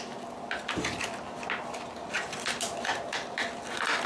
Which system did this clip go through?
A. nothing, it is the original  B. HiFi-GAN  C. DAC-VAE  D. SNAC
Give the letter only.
A